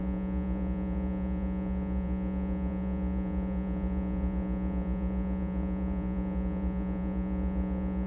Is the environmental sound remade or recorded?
remade